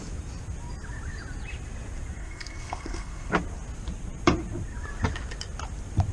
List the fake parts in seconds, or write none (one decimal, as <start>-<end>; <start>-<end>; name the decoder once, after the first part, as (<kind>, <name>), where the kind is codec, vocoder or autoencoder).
2.2-3.3 (codec, SNAC)